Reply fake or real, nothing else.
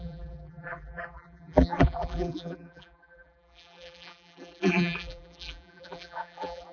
fake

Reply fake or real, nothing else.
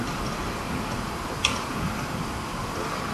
fake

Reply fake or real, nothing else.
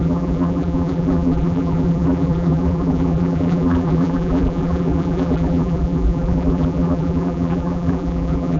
fake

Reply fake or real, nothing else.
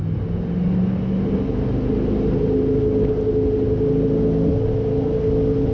real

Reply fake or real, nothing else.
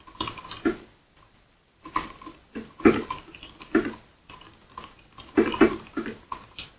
real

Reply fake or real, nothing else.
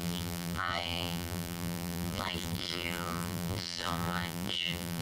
fake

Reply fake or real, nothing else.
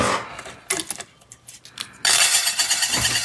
real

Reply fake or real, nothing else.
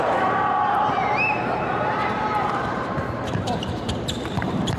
fake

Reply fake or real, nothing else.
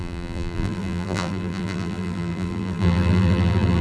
fake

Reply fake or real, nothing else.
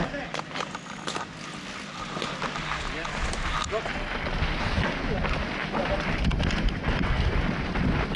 real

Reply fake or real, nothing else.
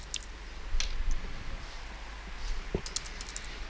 real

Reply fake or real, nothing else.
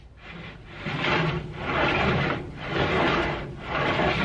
fake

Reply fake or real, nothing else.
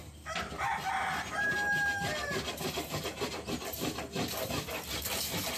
real